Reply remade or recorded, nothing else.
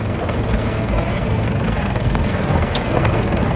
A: remade